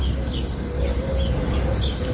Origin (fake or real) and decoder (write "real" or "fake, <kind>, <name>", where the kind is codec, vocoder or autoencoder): real